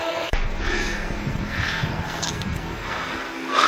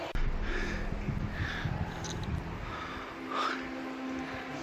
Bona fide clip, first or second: second